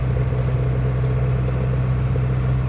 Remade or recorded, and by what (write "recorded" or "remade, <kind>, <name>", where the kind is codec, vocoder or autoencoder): recorded